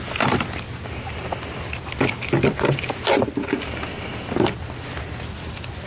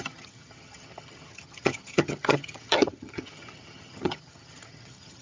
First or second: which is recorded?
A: first